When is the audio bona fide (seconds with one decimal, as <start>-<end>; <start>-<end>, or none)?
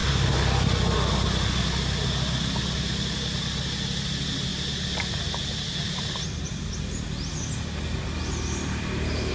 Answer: 0.0-9.3